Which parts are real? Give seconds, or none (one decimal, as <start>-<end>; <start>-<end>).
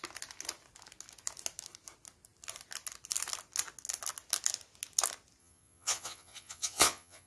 0.0-5.4